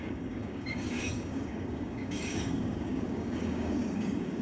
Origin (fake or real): fake